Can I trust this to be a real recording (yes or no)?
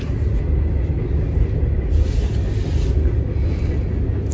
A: yes